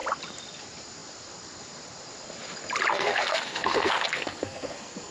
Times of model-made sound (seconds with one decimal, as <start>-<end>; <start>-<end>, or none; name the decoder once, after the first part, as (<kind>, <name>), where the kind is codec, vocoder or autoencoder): 2.9-5.1 (codec, SNAC)